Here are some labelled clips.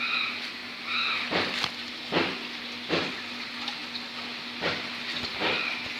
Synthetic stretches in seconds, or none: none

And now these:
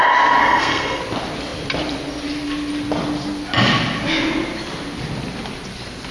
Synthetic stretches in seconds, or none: 0.4-1.0 (codec, SNAC)

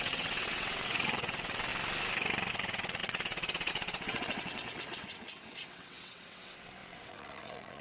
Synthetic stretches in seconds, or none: 0.0-1.7 (vocoder, WaveNeXt); 2.5-7.8

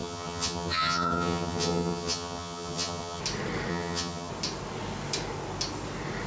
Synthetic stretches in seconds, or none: 0.0-3.2 (vocoder, HiFi-GAN); 3.7-4.3

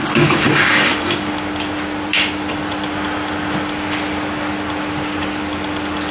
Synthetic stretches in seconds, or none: 0.0-1.3 (codec, DAC)

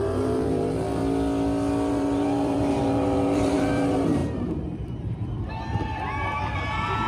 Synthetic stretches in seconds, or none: 0.0-1.0 (vocoder, BigVGAN v2); 1.9-7.1

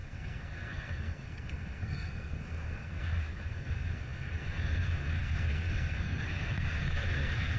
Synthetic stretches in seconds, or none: 0.0-7.6 (codec, SNAC)